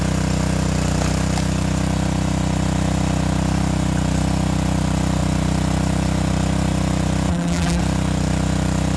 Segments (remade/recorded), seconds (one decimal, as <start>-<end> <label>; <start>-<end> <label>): 0.0-7.3 recorded; 7.3-7.8 remade; 7.8-9.0 recorded